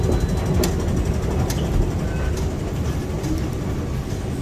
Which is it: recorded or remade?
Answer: recorded